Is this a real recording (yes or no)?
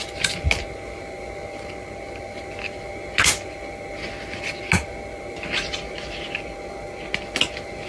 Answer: yes